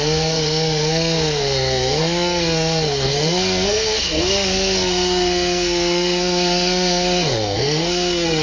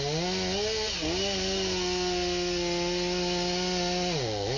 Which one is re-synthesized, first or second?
first